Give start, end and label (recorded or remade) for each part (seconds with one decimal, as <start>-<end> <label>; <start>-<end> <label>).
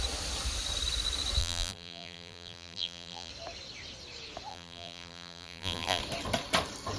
0.0-1.4 recorded; 1.4-3.3 remade; 3.3-4.5 recorded; 4.5-6.0 remade; 6.0-7.0 recorded